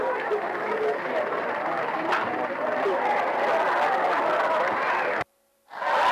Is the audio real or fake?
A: real